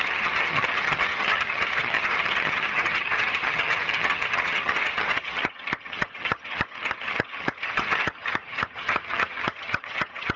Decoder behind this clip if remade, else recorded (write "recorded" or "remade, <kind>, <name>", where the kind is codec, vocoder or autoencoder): remade, vocoder, HiFi-GAN